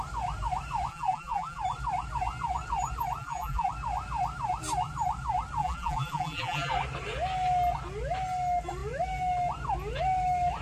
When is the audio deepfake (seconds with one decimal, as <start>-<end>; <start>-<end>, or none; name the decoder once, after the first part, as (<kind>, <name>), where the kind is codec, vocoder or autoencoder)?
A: 0.9-1.6 (vocoder, BigVGAN v2); 3.2-3.7; 5.6-6.7